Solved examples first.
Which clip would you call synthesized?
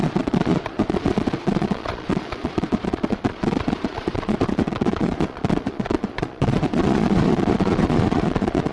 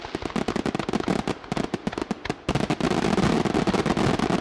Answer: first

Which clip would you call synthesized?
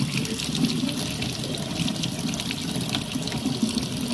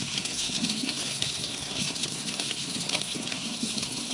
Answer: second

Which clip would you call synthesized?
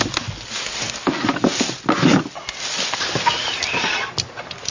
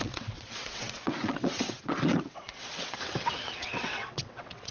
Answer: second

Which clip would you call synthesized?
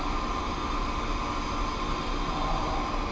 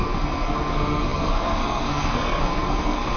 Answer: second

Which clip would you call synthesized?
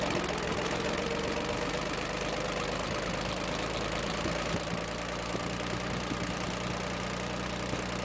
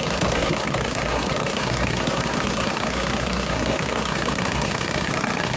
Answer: second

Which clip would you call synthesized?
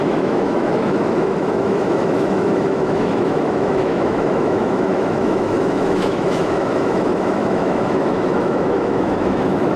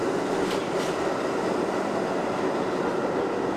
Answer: first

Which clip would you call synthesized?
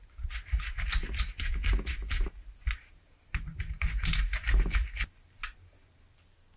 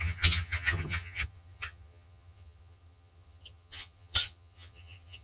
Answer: second